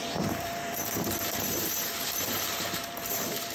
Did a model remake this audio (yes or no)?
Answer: yes